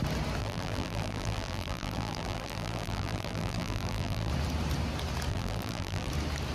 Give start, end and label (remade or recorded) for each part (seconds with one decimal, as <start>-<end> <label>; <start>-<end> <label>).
0.0-0.4 recorded; 0.4-4.3 remade; 4.3-5.3 recorded; 5.3-6.1 remade; 6.1-6.5 recorded

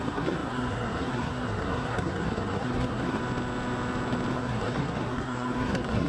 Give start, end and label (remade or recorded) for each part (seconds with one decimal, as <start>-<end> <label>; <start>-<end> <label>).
0.0-3.2 remade; 3.2-4.3 recorded; 4.3-6.1 remade